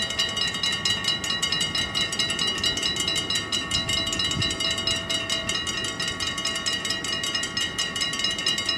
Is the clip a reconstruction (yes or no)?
no